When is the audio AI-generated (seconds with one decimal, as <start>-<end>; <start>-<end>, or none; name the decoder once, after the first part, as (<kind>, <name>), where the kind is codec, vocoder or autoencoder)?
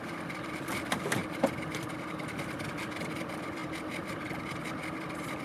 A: 0.0-3.6 (vocoder, BigVGAN v2); 4.1-5.4